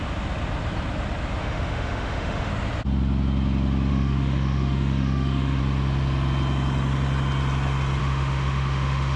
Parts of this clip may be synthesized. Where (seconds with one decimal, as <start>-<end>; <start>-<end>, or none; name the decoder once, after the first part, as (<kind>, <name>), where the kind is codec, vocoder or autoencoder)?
1.4-2.5 (autoencoder, DAC-VAE); 3.9-5.6; 8.0-9.2